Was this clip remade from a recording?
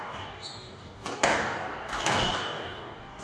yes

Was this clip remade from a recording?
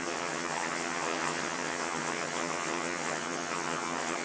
yes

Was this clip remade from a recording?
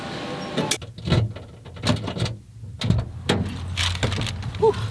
no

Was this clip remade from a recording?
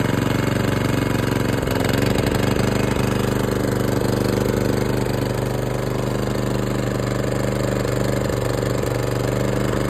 no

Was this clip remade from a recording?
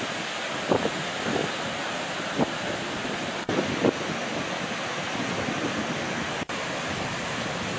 no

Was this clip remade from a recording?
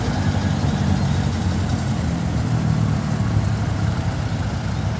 no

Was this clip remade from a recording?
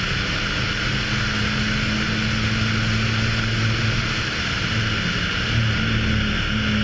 no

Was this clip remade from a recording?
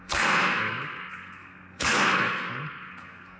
yes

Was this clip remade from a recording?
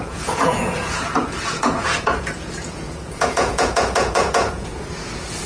yes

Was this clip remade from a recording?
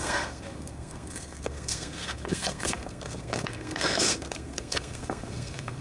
yes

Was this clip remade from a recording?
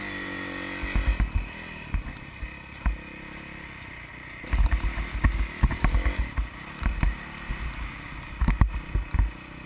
no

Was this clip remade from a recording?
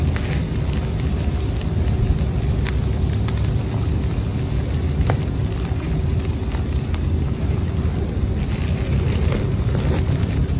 no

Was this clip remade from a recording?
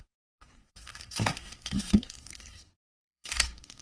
yes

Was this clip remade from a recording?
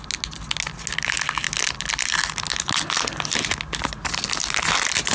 no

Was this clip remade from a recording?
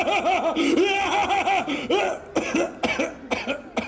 no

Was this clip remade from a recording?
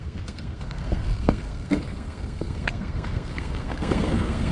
yes